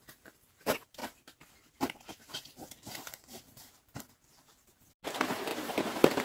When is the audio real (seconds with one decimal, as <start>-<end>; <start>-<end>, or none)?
1.0-1.8; 5.5-6.2